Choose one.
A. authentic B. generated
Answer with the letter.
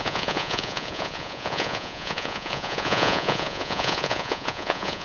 B